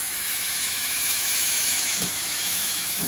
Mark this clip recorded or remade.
remade